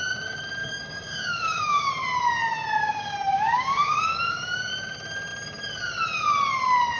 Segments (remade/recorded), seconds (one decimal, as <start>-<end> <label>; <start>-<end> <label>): 0.0-0.6 recorded; 0.6-1.9 remade; 1.9-2.8 recorded; 2.8-4.7 remade; 4.7-7.0 recorded

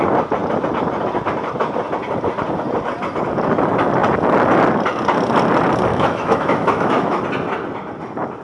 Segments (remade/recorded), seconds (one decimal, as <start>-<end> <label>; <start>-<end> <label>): 0.0-5.9 recorded; 5.9-7.2 remade; 7.2-8.4 recorded

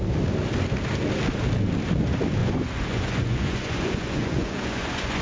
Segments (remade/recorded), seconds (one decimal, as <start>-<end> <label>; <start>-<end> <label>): 0.0-2.4 recorded; 2.4-5.2 remade

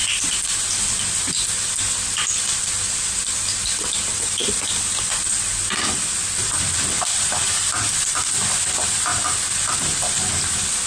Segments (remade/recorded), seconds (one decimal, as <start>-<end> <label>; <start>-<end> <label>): 0.0-4.0 remade; 4.0-4.4 recorded; 4.4-8.2 remade; 8.2-9.1 recorded; 9.1-9.7 remade; 9.7-10.9 recorded

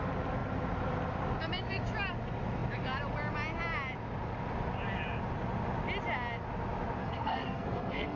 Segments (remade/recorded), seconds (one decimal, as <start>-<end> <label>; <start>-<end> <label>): 0.0-7.0 recorded; 7.0-8.2 remade

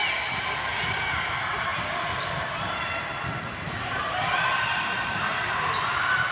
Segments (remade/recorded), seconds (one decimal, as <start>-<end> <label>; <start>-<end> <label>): 0.0-6.3 recorded

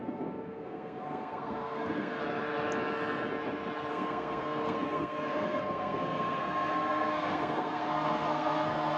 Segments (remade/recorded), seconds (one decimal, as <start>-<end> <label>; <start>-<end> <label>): 0.0-2.2 remade; 2.2-3.9 recorded; 3.9-9.0 remade